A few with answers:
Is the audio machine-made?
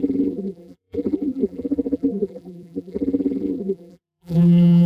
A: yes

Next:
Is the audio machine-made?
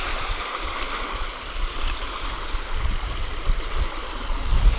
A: no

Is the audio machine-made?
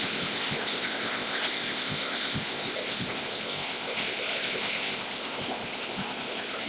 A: yes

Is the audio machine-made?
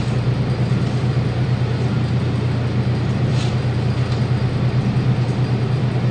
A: no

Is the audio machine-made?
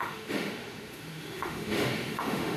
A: yes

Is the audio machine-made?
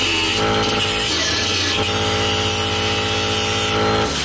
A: no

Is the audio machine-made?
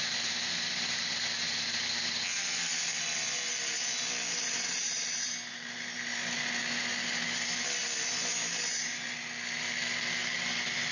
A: no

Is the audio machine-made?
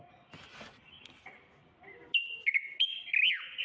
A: no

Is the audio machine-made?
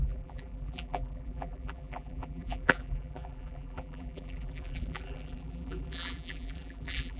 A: yes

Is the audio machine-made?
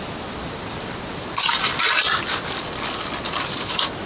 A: no